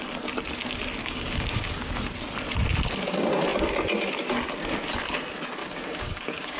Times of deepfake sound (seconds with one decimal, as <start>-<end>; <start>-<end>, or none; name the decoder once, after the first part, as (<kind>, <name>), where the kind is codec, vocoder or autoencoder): 1.0-2.0 (codec, DAC); 5.6-6.6